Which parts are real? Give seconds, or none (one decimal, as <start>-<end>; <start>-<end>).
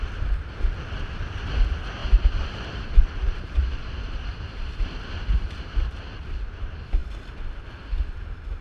0.0-2.0; 6.3-8.6